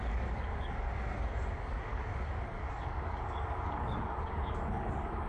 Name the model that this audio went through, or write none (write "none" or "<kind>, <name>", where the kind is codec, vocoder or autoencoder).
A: codec, DAC